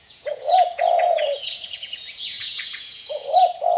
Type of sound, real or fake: fake